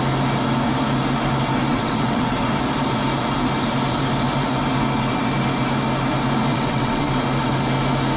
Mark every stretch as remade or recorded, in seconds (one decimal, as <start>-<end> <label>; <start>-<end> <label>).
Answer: 0.0-1.7 recorded; 1.7-2.3 remade; 2.3-6.5 recorded; 6.5-7.1 remade; 7.1-8.2 recorded